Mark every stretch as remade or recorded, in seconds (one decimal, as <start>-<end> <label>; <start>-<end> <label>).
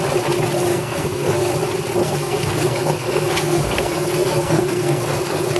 0.0-0.7 recorded; 0.7-1.5 remade; 1.5-2.0 recorded; 2.0-5.6 remade